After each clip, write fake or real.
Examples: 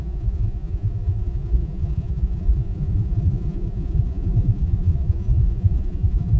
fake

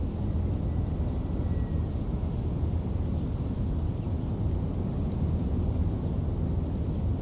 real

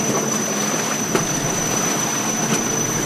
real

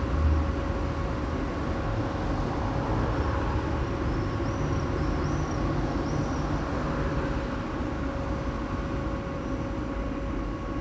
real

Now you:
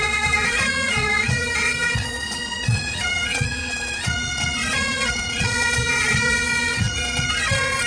fake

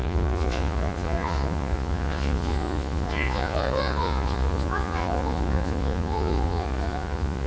fake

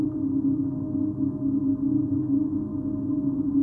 real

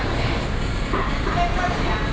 real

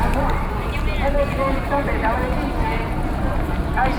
real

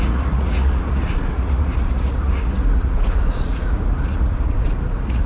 fake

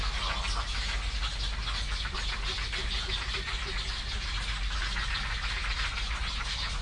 real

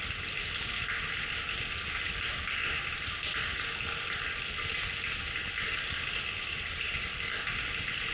real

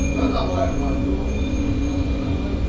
fake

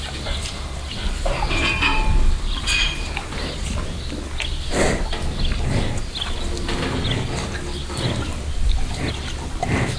real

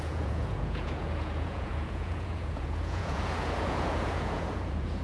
fake